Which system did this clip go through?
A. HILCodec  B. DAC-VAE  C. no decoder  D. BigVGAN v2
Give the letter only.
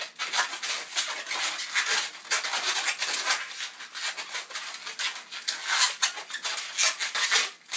C